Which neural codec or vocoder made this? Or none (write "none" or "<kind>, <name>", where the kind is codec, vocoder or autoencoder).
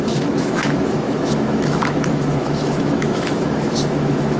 autoencoder, DAC-VAE